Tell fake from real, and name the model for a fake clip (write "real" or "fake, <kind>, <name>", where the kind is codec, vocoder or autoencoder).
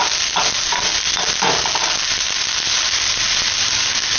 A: real